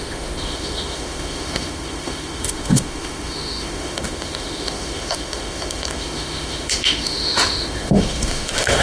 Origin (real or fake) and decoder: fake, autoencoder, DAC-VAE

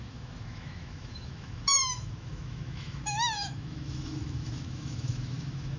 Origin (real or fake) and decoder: fake, autoencoder, DAC-VAE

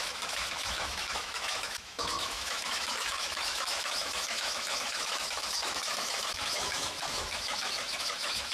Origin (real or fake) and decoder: fake, autoencoder, DAC-VAE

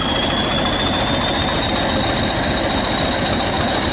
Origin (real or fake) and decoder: real